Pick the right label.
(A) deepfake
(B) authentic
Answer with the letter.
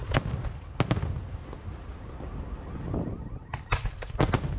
B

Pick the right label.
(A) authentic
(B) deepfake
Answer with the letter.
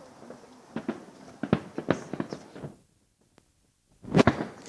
A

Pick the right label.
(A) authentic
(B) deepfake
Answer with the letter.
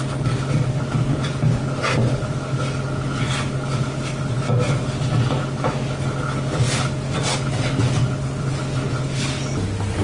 A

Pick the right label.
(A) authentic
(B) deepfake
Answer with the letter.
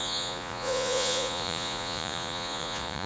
B